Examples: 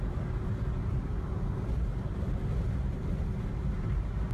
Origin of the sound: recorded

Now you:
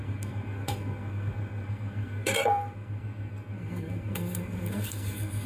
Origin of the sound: remade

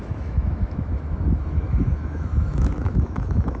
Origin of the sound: remade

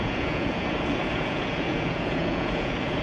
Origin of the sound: remade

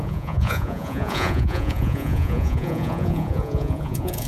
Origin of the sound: remade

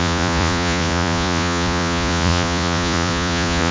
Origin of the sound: remade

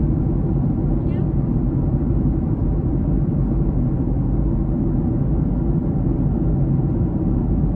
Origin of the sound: recorded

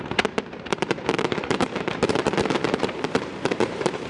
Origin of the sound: remade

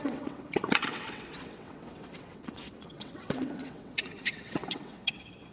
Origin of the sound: remade